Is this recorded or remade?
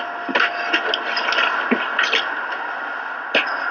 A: recorded